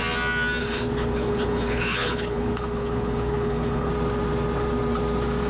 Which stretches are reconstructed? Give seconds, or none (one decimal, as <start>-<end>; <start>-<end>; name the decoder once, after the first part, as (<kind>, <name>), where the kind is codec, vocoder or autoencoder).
0.6-3.9 (codec, HILCodec)